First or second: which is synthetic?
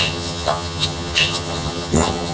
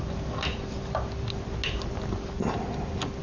first